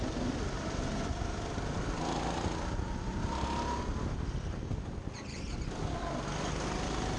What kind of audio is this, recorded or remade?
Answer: recorded